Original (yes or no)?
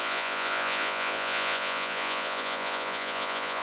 no